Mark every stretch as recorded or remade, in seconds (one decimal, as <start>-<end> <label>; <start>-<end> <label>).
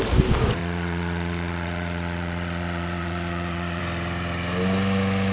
0.0-0.6 recorded; 0.6-3.8 remade; 3.8-5.3 recorded